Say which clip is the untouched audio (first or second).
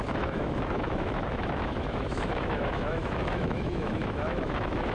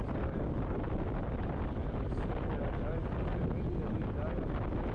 second